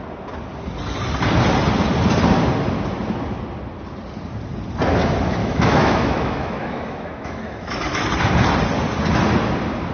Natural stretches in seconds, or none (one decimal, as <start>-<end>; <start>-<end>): 0.0-5.4; 7.7-9.9